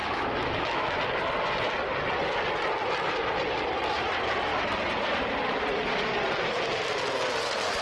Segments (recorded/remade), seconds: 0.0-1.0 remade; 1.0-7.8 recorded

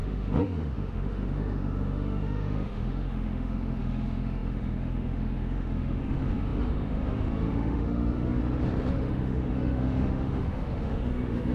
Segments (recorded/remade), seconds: 0.0-8.4 remade; 8.4-8.9 recorded; 8.9-11.5 remade

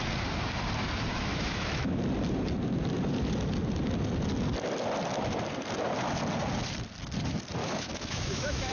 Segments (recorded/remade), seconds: 0.0-1.1 recorded; 1.1-2.0 remade; 2.0-7.6 recorded; 7.6-8.7 remade

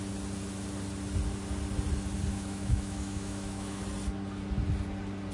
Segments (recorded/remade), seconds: 0.0-2.3 recorded; 2.3-3.8 remade; 3.8-5.3 recorded

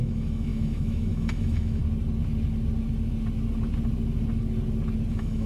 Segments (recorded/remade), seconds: 0.0-1.8 remade; 1.8-5.1 recorded; 5.1-5.5 remade

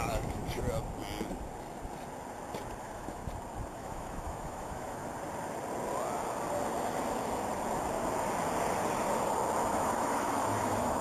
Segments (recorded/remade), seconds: 0.0-0.4 remade; 0.4-2.8 recorded; 2.8-3.2 remade; 3.2-3.7 recorded; 3.7-5.0 remade; 5.0-9.7 recorded; 9.7-11.0 remade